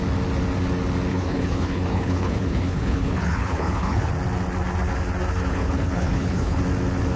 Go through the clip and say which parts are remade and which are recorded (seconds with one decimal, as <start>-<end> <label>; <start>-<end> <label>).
0.0-1.1 recorded; 1.1-4.1 remade; 4.1-5.5 recorded; 5.5-6.6 remade; 6.6-7.2 recorded